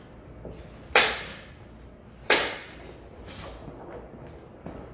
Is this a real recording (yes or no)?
yes